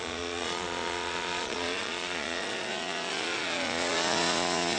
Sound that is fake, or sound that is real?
fake